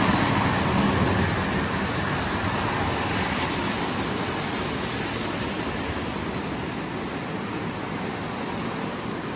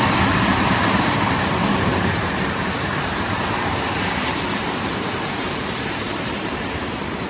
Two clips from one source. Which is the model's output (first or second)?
second